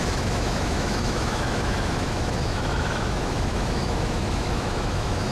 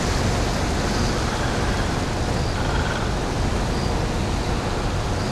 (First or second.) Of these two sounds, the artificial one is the first